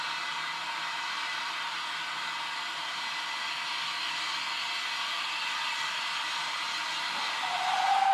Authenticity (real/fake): real